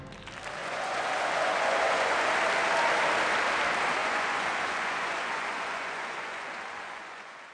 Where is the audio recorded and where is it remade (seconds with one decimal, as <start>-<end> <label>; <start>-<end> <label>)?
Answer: 0.0-0.6 recorded; 0.6-2.3 remade; 2.3-4.0 recorded; 4.0-7.5 remade